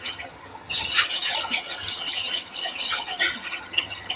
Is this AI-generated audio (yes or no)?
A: yes